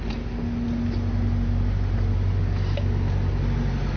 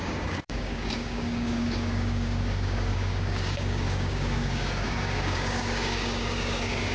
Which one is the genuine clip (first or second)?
first